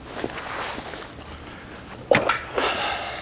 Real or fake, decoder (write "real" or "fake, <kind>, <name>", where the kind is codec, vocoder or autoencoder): real